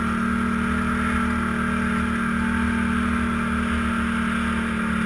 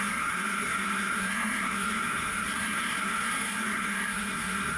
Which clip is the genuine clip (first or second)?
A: first